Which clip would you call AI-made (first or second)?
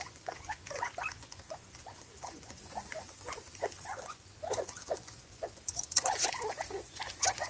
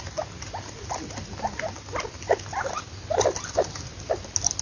first